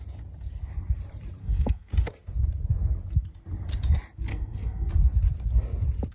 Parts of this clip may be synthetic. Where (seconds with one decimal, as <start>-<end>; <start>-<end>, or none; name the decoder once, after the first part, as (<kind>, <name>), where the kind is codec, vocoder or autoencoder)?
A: 1.4-1.9 (codec, SNAC); 4.3-4.9